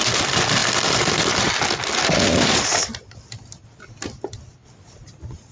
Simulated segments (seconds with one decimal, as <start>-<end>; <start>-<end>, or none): 0.6-1.6